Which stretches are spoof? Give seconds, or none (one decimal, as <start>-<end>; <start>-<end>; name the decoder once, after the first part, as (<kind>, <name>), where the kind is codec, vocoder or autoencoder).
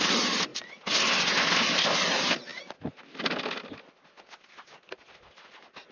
none